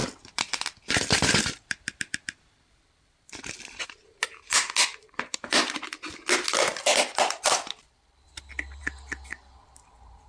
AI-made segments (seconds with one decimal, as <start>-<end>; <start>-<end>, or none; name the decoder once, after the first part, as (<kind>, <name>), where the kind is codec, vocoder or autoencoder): 0.0-3.9 (vocoder, BigVGAN v2); 4.8-6.0; 6.7-8.8

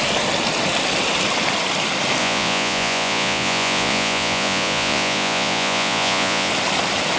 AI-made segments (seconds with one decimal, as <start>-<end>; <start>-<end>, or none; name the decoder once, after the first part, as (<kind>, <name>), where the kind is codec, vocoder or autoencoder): 2.2-6.5 (vocoder, Vocos)

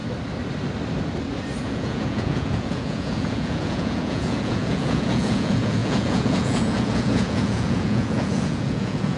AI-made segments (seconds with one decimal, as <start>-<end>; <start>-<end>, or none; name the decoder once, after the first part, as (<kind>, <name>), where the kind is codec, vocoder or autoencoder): 1.6-9.2 (vocoder, Vocos)

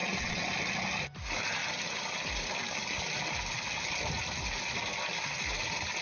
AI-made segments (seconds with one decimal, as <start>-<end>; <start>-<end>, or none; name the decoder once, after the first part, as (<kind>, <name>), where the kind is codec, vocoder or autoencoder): 0.0-0.5 (vocoder, WaveNeXt)

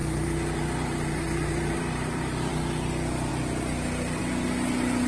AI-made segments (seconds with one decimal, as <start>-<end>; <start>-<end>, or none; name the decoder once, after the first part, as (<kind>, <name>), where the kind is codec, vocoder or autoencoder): 0.0-2.5 (vocoder, BigVGAN v2)